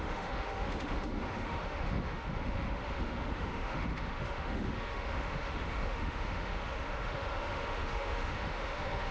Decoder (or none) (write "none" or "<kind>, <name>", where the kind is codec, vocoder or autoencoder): autoencoder, DAC-VAE